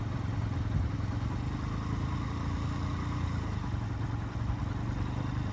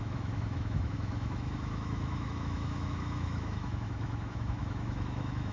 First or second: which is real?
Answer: first